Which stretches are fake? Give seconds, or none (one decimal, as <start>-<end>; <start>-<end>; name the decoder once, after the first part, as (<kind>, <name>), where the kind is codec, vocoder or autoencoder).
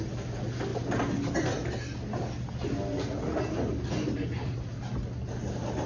none